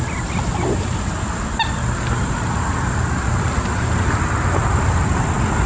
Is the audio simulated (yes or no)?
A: no